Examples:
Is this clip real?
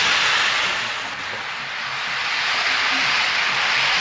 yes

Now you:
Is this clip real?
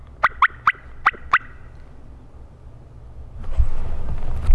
yes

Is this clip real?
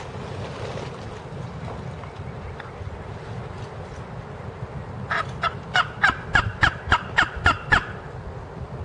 yes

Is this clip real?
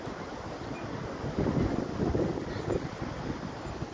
yes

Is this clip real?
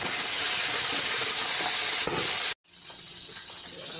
yes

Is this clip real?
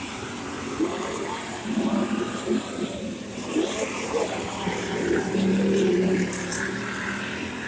no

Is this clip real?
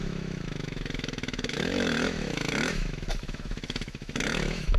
no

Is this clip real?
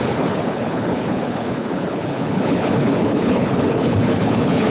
no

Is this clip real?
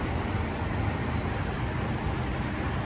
yes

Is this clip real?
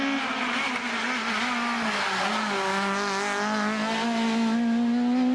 yes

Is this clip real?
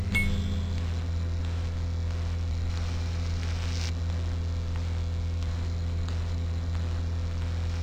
yes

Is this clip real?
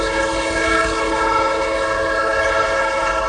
no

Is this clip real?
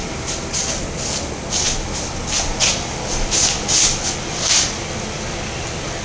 yes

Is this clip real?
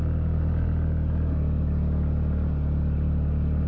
yes